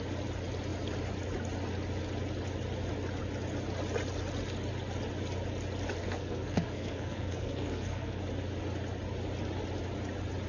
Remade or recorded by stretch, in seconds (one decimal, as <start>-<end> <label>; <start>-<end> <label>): 0.0-6.0 recorded; 6.0-8.2 remade; 8.2-10.5 recorded